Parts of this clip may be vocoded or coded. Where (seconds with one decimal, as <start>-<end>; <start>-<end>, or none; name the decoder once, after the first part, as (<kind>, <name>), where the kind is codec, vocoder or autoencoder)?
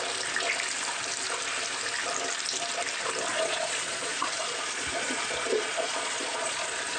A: 3.3-6.6 (vocoder, Vocos)